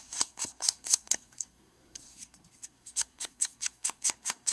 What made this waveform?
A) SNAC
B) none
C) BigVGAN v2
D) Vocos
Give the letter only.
A